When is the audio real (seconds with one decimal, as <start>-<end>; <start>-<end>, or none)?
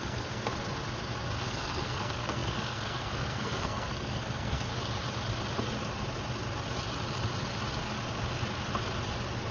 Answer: 0.5-1.4; 4.7-9.5